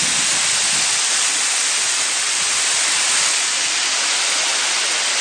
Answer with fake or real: real